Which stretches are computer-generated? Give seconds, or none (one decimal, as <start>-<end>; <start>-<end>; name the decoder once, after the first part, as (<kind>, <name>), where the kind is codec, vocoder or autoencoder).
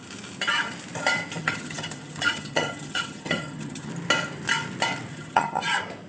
1.4-3.9 (vocoder, HiFi-GAN); 5.1-5.6